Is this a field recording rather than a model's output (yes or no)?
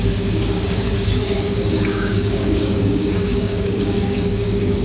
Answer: no